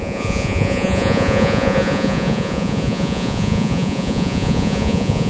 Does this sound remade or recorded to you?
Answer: remade